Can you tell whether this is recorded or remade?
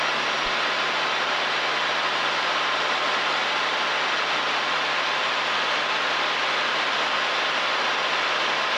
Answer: recorded